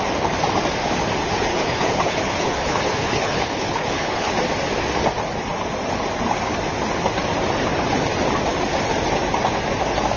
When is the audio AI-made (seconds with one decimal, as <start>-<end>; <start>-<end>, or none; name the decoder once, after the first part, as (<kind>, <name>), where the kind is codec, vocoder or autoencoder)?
1.5-4.3 (codec, HILCodec)